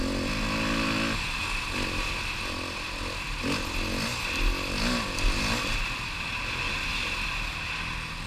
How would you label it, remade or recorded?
recorded